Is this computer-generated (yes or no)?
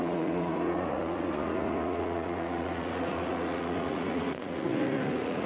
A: yes